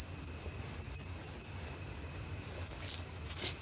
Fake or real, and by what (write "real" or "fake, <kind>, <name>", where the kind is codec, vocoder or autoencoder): real